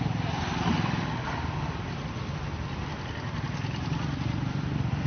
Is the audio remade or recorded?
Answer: recorded